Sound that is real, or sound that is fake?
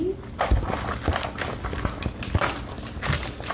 real